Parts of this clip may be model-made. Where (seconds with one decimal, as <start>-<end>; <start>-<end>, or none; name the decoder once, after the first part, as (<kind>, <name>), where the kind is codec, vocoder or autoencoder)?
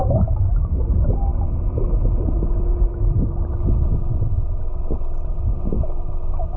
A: none